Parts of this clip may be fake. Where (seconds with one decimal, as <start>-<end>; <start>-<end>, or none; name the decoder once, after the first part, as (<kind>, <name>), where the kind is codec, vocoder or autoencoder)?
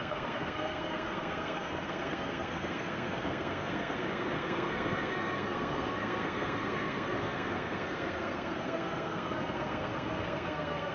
0.0-10.9 (codec, SNAC)